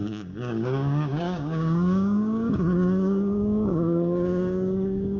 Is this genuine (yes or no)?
no